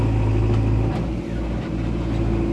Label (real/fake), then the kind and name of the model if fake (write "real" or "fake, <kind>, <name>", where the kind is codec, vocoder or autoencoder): real